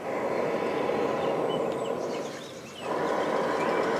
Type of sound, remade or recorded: recorded